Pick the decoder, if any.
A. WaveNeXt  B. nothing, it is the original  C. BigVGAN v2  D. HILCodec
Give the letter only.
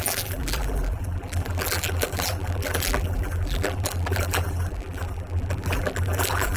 C